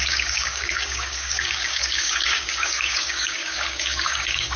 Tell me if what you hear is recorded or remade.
remade